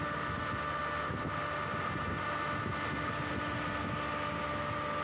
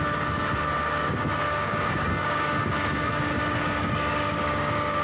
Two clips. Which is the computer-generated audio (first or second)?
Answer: second